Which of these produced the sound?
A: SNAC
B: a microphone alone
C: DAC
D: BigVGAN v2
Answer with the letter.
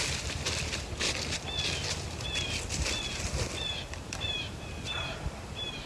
B